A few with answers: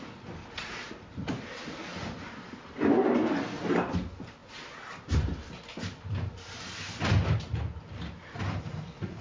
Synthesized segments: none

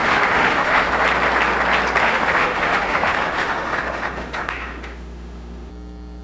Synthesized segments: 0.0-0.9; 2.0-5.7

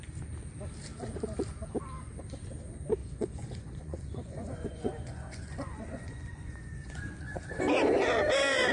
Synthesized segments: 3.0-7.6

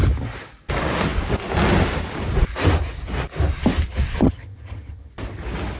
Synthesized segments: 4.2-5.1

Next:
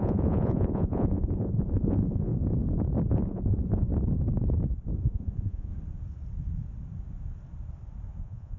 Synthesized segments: 0.0-2.3; 3.1-3.9; 5.0-5.7; 8.2-8.6